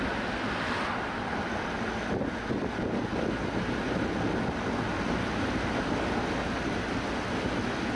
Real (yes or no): yes